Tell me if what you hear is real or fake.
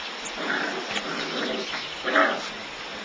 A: real